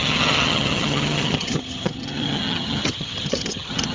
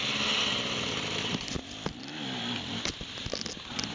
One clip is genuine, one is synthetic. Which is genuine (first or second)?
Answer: second